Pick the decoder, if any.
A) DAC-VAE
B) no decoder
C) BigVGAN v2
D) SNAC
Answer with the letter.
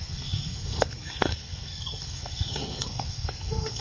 D